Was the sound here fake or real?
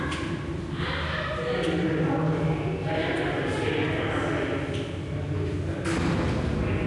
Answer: real